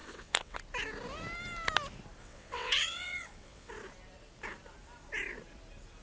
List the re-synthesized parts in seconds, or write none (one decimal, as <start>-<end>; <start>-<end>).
0.0-0.6; 2.2-3.7